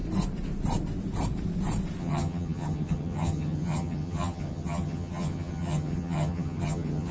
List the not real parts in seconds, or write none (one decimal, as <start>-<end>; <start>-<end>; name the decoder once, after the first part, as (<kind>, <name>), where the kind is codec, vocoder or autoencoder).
2.0-7.1 (vocoder, HiFi-GAN)